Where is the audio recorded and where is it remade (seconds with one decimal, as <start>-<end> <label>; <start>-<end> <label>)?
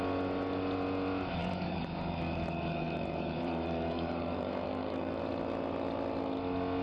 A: 0.0-1.4 recorded; 1.4-5.2 remade; 5.2-6.8 recorded